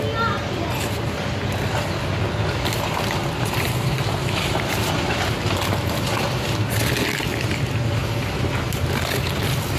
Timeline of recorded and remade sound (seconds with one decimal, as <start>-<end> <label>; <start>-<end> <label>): 0.0-3.2 recorded; 3.2-3.9 remade; 3.9-8.0 recorded; 8.0-9.4 remade; 9.4-9.8 recorded